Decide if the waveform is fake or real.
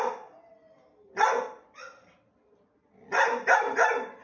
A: real